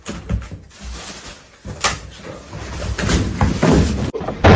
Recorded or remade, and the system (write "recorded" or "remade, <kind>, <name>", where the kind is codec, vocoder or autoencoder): recorded